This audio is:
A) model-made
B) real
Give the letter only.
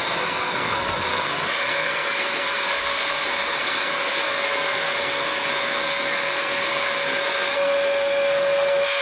A